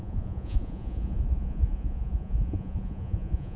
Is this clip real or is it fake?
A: fake